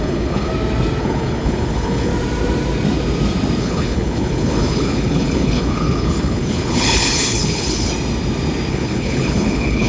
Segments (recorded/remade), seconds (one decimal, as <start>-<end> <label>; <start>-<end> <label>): 0.0-0.5 remade; 0.5-1.0 recorded; 1.0-2.1 remade; 2.1-3.6 recorded; 3.6-7.9 remade; 7.9-8.7 recorded; 8.7-9.9 remade